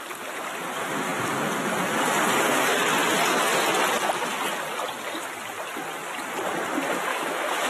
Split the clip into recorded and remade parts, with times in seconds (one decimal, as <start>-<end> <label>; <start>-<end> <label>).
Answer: 0.0-7.1 recorded; 7.1-7.7 remade